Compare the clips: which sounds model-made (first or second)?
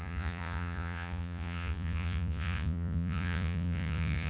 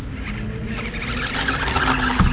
first